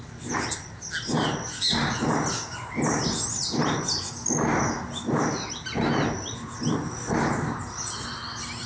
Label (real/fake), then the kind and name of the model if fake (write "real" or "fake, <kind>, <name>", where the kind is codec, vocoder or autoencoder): real